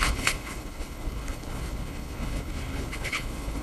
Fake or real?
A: fake